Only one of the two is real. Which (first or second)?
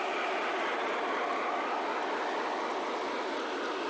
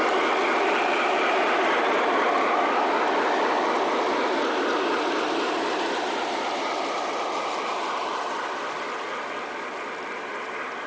first